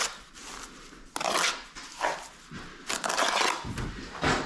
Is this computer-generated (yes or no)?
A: no